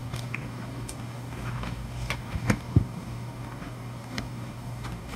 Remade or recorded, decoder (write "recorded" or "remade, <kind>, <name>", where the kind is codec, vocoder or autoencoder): remade, codec, DAC